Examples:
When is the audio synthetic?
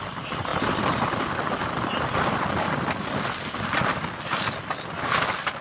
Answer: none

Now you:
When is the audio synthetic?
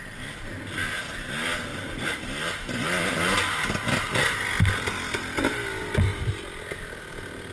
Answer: none